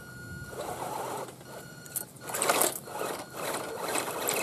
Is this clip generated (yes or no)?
no